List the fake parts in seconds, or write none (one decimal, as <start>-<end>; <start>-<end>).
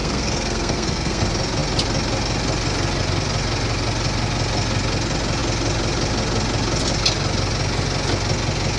0.0-1.2